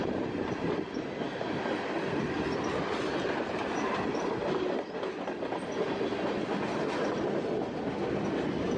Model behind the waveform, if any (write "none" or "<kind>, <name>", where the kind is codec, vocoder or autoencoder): none